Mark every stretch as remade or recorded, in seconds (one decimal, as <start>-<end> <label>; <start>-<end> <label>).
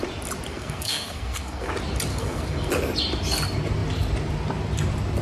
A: 0.0-0.5 recorded; 0.5-1.7 remade; 1.7-2.1 recorded; 2.1-2.7 remade; 2.7-5.2 recorded